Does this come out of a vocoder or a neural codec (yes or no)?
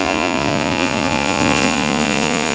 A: yes